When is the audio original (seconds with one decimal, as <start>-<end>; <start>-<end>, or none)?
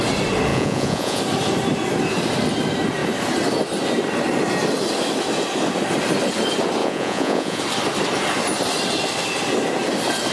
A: 0.0-0.5; 1.2-6.8; 7.6-10.3